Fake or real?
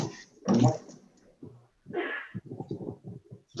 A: real